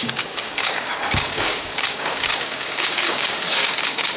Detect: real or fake fake